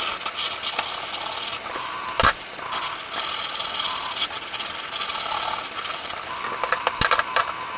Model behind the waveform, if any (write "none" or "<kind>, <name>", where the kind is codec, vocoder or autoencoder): none